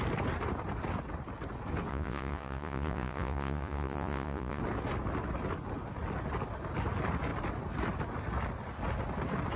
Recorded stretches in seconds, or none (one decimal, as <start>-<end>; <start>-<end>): 0.0-1.9; 4.6-9.6